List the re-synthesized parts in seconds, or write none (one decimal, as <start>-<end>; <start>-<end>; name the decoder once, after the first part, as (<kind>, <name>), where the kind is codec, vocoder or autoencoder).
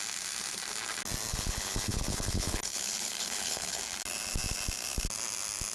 1.3-3.8 (codec, HILCodec)